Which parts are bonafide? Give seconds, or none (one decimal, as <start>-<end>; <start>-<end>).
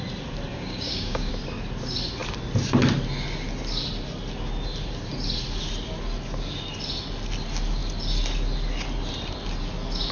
0.0-0.5; 1.3-10.1